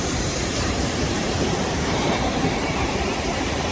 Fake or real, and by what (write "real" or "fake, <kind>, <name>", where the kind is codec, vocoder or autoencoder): fake, vocoder, BigVGAN v2